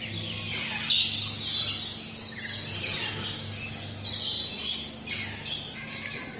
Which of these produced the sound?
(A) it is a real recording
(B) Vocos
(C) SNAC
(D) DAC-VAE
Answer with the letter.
A